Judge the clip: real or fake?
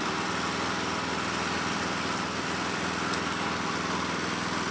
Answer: real